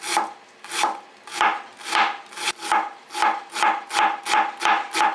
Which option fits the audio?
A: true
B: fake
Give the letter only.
A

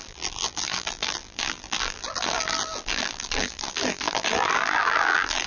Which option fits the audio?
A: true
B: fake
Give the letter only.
B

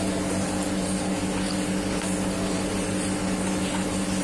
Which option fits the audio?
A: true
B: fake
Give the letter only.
A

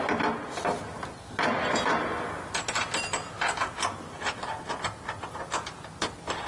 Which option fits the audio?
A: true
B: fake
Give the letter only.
A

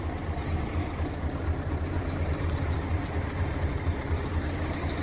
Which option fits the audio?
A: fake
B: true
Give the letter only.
A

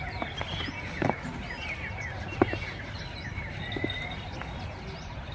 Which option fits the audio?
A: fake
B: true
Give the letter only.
B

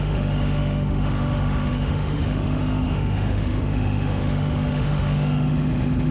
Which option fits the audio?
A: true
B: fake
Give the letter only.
B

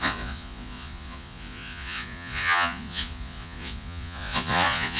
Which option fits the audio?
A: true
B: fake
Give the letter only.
B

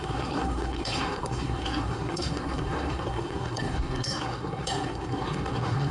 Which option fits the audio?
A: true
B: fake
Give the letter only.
B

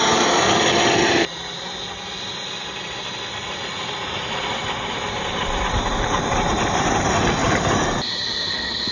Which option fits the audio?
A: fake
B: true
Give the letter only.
B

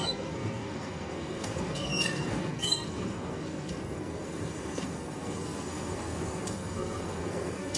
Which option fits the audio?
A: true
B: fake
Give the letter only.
B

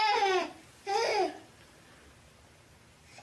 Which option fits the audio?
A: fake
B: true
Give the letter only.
B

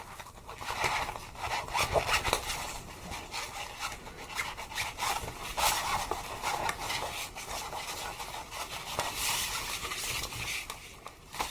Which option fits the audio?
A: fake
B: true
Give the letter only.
B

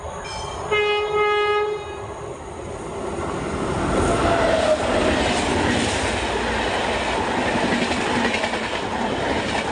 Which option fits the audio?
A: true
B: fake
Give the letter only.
A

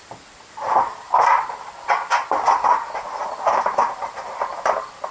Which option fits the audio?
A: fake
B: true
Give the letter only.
B